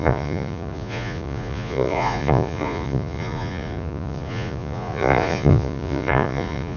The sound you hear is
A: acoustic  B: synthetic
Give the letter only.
B